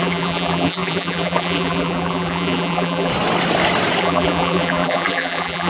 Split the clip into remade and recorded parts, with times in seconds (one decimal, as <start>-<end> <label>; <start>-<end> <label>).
0.0-3.1 remade; 3.1-4.0 recorded; 4.0-5.7 remade

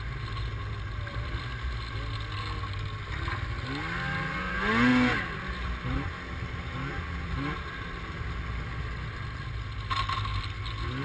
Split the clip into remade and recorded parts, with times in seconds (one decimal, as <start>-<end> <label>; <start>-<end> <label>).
0.0-11.0 recorded

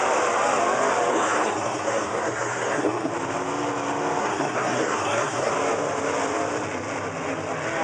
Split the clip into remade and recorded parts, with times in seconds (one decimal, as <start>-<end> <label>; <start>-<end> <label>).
0.0-1.1 recorded; 1.1-3.1 remade; 3.1-4.2 recorded; 4.2-5.5 remade; 5.5-7.8 recorded

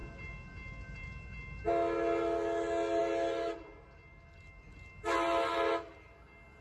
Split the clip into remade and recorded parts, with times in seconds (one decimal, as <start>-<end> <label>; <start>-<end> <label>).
0.0-6.6 recorded

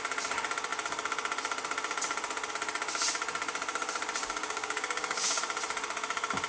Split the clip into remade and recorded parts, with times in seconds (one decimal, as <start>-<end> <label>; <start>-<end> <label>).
0.0-4.2 recorded; 4.2-5.4 remade; 5.4-6.5 recorded

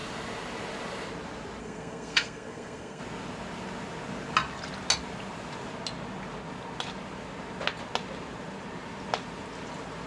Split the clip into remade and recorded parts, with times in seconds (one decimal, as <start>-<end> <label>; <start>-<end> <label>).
0.0-1.6 recorded; 1.6-3.0 remade; 3.0-10.1 recorded